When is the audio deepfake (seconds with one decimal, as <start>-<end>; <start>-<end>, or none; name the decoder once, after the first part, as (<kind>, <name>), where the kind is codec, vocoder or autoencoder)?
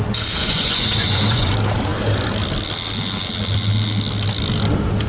0.4-1.5 (vocoder, Vocos)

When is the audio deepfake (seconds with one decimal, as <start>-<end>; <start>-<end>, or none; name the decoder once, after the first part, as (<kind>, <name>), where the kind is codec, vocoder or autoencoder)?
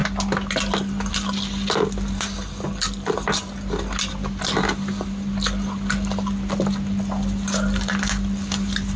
none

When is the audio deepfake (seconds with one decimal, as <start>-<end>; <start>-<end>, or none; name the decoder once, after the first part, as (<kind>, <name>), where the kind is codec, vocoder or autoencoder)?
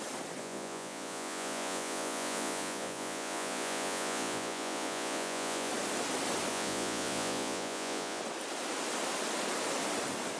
0.4-5.7 (vocoder, Vocos); 6.5-8.2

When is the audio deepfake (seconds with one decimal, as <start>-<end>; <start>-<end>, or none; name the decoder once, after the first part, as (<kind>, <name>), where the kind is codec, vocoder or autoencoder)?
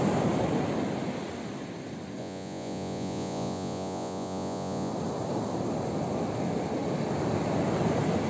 2.2-4.9 (vocoder, Vocos)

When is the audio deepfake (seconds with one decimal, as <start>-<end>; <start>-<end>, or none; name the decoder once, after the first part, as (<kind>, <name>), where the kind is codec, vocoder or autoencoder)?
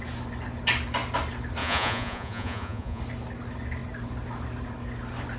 1.6-3.0 (vocoder, Vocos)